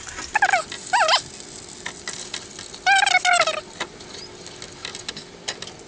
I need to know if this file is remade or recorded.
recorded